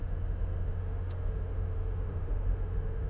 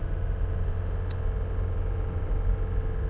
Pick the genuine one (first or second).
second